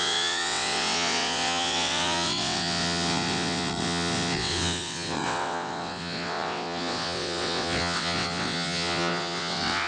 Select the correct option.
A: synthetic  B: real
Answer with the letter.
A